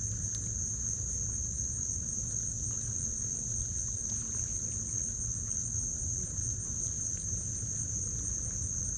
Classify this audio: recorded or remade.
recorded